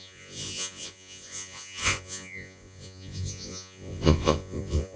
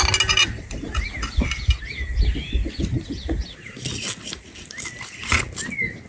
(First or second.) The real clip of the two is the second